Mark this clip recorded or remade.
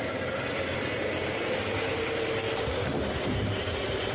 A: recorded